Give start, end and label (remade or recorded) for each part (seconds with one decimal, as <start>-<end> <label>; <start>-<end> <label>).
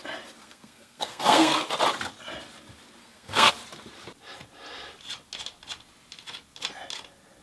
0.0-0.4 recorded; 0.4-1.6 remade; 1.6-3.0 recorded; 3.0-3.5 remade; 3.5-7.4 recorded